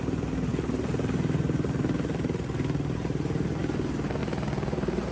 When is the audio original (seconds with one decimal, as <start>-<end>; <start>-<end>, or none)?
0.0-0.5; 3.6-4.2